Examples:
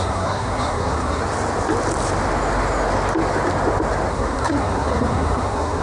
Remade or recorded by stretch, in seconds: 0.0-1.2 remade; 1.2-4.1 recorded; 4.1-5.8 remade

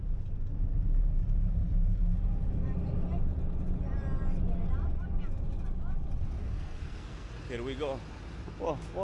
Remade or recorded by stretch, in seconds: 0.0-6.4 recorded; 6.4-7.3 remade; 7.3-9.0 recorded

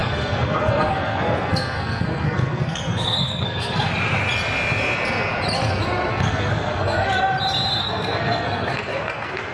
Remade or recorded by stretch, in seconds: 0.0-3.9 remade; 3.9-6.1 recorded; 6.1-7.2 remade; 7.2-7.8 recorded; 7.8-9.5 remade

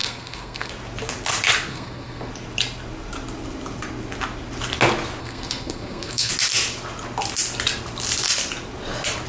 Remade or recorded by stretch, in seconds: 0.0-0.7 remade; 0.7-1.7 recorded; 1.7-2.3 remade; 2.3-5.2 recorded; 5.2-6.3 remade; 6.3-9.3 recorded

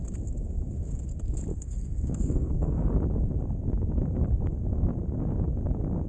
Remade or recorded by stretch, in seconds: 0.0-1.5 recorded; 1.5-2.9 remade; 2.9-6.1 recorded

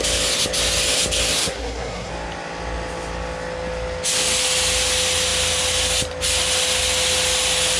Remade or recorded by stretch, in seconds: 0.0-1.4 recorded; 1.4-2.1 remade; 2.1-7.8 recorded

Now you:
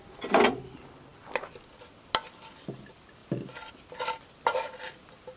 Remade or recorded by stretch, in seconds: 0.0-5.4 recorded

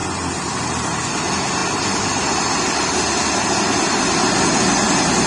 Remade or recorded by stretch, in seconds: 0.0-5.3 recorded